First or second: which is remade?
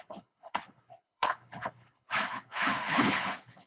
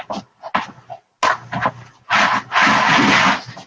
first